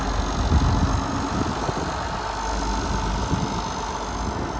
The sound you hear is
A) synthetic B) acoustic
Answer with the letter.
B